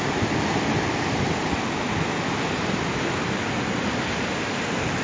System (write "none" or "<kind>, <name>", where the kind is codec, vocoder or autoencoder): none